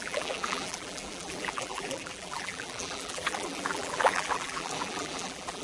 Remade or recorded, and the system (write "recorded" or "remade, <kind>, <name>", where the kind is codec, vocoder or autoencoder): remade, vocoder, BigVGAN v2